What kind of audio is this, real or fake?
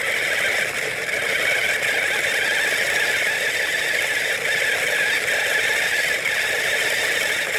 real